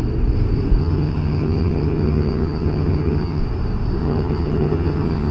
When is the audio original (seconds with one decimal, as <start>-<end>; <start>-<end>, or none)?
0.0-0.8; 3.4-4.0